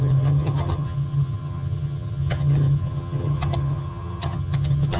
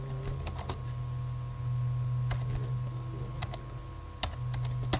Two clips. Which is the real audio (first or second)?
second